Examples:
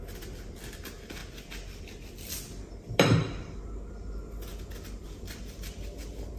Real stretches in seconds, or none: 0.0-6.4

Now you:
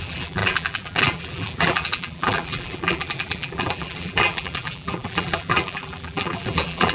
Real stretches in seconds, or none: none

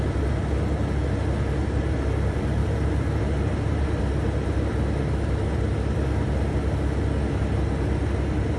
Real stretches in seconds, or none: 0.0-2.6; 4.0-8.6

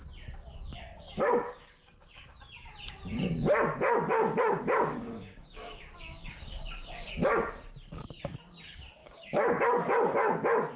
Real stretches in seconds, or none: 0.0-0.7; 2.3-4.1; 7.1-9.0; 9.6-10.8

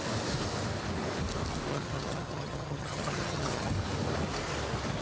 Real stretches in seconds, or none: 0.0-1.7; 3.7-5.0

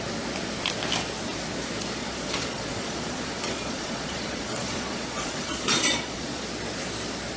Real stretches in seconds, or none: 0.0-2.0; 6.4-7.4